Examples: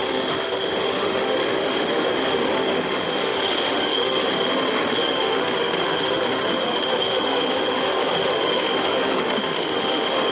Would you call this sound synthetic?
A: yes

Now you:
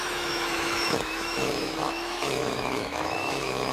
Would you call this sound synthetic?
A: yes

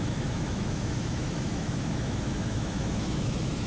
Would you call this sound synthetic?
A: yes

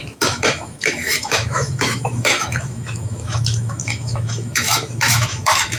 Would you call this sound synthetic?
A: yes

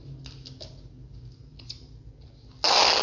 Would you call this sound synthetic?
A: no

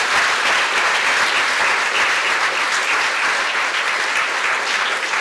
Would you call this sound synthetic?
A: no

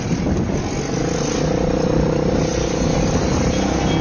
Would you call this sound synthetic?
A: no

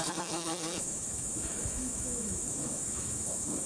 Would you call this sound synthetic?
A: yes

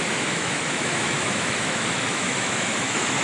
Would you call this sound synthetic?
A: yes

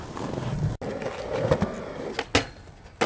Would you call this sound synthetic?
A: no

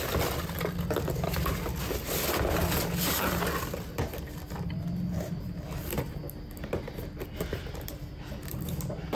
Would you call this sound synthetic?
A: no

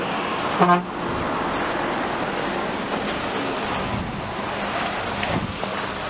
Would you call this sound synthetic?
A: no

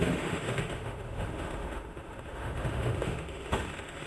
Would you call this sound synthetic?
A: yes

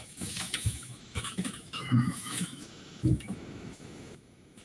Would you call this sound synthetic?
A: yes